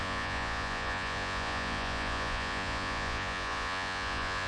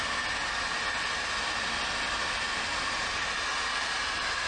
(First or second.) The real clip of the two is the second